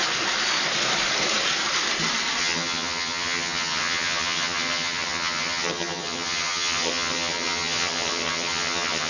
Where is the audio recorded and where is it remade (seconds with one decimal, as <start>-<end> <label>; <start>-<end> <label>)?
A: 0.0-2.4 recorded; 2.4-9.1 remade